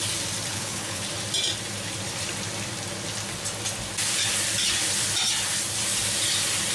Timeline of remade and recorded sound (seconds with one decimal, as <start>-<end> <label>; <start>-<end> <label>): 0.0-0.5 recorded; 0.5-1.0 remade; 1.0-6.7 recorded